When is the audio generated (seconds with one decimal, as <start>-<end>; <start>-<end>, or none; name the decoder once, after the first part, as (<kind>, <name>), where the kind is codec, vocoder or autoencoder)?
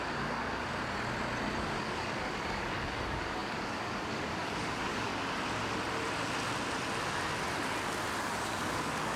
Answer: 0.0-0.7 (codec, DAC); 1.6-5.1; 8.2-9.2